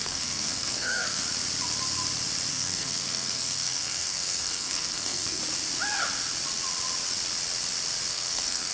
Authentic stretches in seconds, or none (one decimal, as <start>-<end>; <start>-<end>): 1.2-2.5; 5.4-8.1